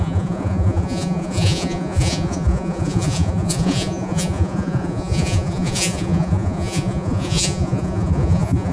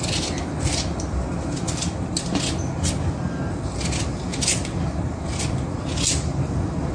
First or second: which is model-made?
first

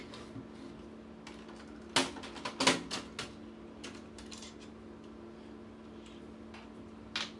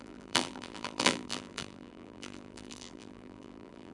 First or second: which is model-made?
second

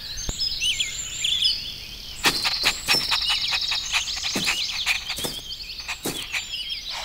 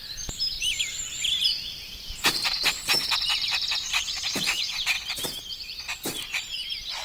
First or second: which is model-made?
second